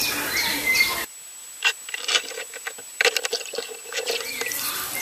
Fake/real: fake